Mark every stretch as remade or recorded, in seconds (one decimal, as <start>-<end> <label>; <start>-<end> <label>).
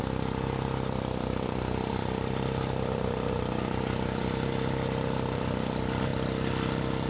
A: 0.0-7.1 recorded